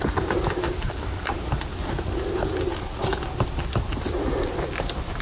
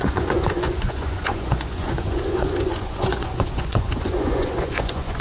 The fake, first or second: second